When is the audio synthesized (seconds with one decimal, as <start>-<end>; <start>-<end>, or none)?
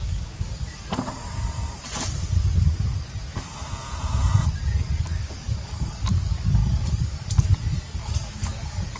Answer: 0.0-1.2; 5.0-9.0